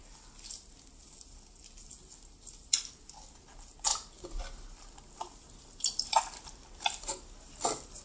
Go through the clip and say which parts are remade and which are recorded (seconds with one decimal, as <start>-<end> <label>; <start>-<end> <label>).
0.0-8.0 recorded